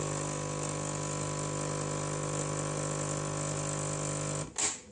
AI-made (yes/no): no